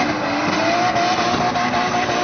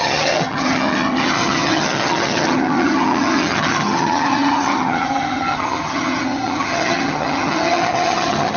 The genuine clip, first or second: first